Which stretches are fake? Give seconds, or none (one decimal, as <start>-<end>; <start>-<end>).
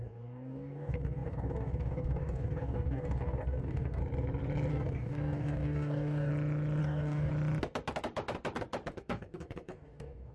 0.0-4.0; 4.7-6.3; 6.8-7.3; 8.9-10.3